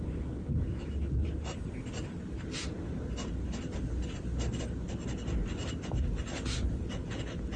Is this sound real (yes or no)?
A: yes